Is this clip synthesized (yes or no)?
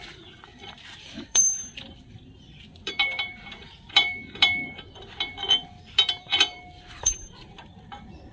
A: yes